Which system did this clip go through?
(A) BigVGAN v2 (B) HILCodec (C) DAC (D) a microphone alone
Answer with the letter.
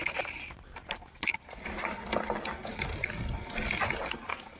D